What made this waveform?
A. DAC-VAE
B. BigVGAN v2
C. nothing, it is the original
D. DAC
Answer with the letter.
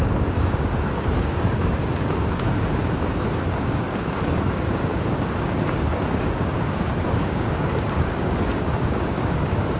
D